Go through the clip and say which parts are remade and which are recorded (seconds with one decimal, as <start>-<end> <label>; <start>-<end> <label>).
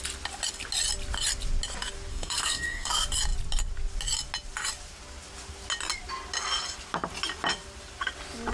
0.0-2.1 recorded; 2.1-2.9 remade; 2.9-8.5 recorded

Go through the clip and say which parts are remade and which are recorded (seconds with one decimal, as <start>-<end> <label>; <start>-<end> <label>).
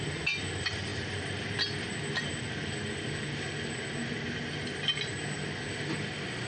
0.0-6.5 recorded